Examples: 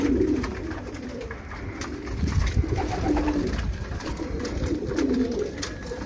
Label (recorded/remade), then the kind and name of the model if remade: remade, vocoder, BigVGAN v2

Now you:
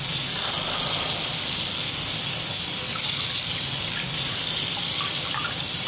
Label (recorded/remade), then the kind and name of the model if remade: recorded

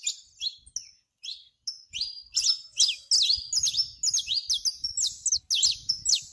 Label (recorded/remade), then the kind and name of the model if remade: recorded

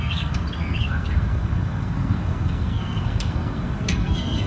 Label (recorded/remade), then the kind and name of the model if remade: remade, codec, SNAC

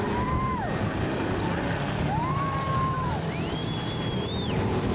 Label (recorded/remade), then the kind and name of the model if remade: recorded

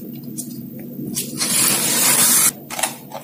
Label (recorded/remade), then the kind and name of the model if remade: recorded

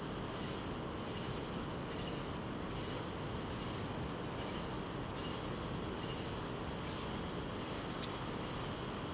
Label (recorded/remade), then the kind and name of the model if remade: recorded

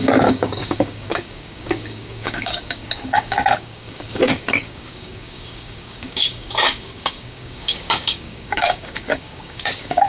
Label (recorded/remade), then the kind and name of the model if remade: remade, codec, DAC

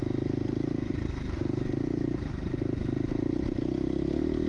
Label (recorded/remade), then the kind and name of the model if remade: recorded